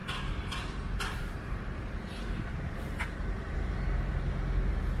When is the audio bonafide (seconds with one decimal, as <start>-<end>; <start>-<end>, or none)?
none